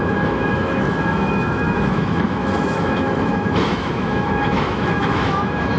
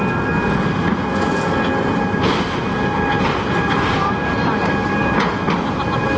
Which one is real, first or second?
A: second